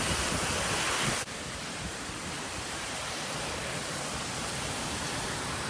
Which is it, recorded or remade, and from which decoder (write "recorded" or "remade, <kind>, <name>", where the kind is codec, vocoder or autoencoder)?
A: recorded